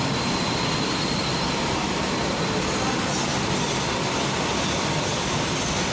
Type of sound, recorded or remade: recorded